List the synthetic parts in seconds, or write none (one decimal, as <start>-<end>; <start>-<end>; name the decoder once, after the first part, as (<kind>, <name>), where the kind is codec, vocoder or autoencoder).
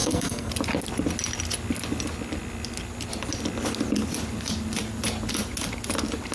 0.0-0.5 (codec, SNAC)